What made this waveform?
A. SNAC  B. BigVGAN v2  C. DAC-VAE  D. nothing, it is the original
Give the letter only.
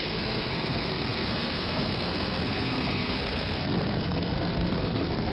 A